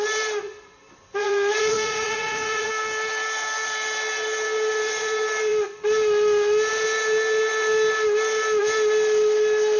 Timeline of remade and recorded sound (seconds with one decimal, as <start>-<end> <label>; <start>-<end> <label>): 0.0-1.2 recorded; 1.2-2.7 remade; 2.7-9.8 recorded